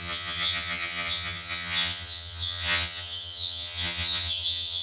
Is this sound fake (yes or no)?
yes